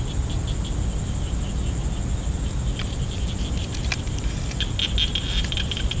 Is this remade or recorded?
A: recorded